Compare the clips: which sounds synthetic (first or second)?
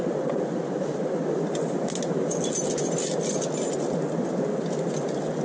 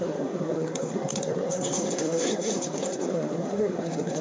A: second